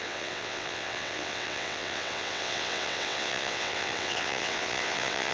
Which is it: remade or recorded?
remade